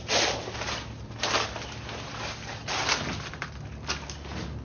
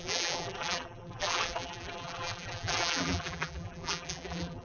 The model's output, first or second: second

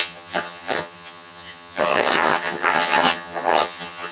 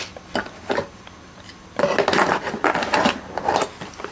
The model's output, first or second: first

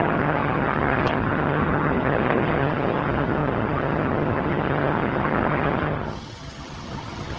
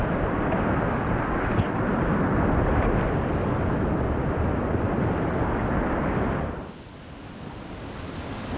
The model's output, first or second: first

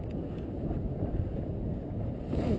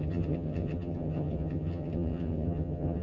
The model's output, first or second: second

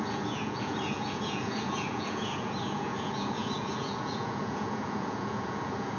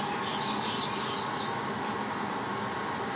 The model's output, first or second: first